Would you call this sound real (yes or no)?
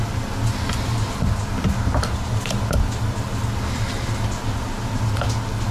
yes